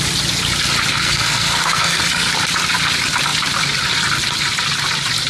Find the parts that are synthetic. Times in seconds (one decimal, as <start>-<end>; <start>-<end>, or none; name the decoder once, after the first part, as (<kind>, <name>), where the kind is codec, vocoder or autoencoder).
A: 0.9-2.3 (codec, SNAC)